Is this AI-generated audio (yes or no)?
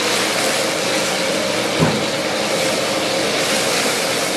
no